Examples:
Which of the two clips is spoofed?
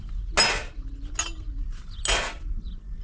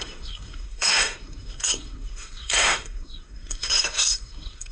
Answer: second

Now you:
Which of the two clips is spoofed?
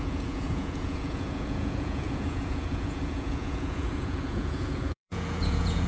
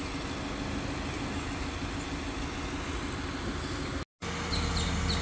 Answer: first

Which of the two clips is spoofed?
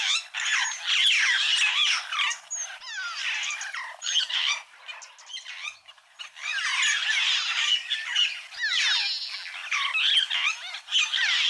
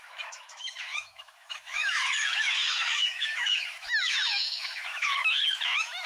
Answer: second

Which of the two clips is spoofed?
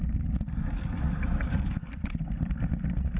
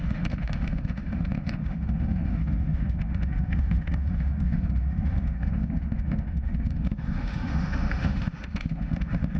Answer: second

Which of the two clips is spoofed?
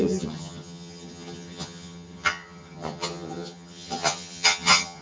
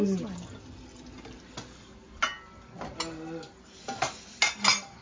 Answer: first